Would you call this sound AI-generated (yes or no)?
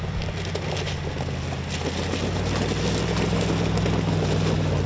no